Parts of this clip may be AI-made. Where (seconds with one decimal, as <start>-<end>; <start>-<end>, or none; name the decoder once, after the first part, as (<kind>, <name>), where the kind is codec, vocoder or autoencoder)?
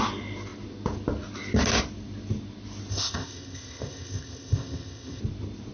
2.9-5.2 (codec, ZipCodec)